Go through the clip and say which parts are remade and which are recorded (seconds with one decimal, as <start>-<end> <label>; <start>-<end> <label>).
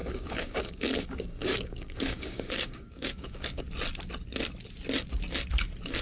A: 0.0-3.6 remade; 3.6-6.0 recorded